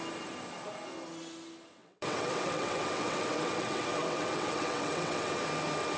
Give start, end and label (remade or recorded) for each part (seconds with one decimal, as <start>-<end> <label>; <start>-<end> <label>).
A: 0.0-1.8 recorded; 1.8-5.4 remade; 5.4-6.0 recorded